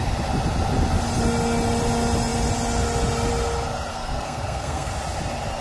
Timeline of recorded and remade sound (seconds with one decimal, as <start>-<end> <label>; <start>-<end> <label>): 0.0-3.9 recorded; 3.9-4.9 remade; 4.9-5.6 recorded